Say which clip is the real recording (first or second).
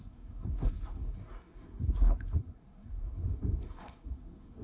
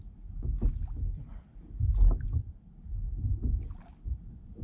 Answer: second